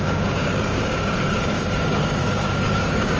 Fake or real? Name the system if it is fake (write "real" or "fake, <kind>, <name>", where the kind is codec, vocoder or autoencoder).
fake, codec, DAC